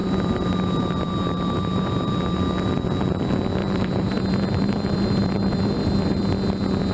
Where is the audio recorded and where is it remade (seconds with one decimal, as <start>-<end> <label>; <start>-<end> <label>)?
0.0-2.2 remade; 2.2-3.6 recorded; 3.6-6.2 remade; 6.2-6.9 recorded